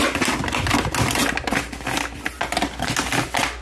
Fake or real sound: real